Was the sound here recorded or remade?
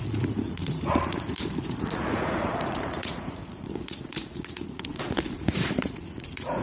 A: remade